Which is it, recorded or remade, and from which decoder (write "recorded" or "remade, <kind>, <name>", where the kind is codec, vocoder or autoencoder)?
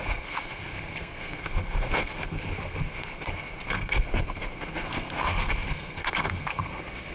remade, codec, SNAC